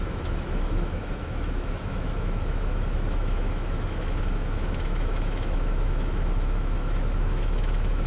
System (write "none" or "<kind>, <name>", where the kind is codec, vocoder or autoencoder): autoencoder, DAC-VAE